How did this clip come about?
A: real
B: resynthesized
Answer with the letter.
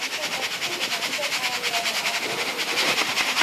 A